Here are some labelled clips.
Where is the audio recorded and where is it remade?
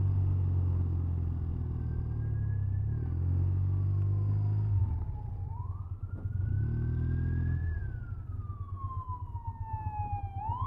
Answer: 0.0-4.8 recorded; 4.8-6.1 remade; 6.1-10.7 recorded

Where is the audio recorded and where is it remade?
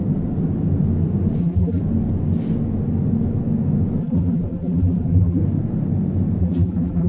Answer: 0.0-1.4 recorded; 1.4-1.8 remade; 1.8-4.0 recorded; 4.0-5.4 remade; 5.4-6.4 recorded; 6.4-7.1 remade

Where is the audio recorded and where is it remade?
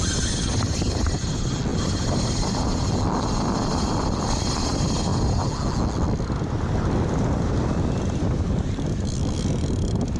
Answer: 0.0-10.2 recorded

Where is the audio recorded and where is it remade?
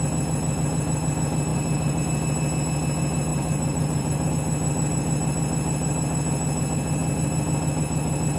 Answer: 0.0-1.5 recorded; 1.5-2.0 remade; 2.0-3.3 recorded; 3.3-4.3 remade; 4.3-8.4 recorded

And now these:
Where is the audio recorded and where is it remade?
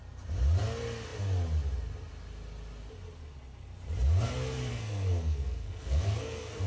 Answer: 0.0-4.7 recorded; 4.7-6.7 remade